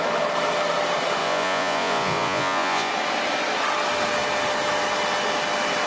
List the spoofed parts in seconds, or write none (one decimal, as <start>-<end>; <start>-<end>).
1.2-2.9